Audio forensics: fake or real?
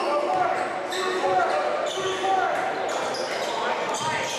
real